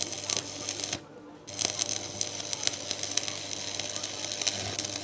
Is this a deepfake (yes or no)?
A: no